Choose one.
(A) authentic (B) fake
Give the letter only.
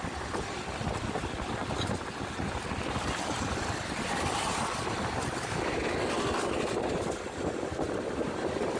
A